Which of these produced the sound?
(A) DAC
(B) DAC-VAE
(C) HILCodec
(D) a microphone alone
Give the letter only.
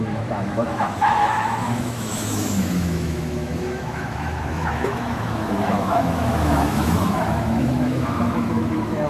B